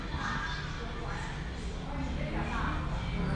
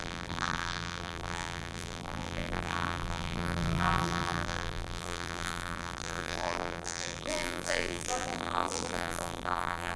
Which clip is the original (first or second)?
first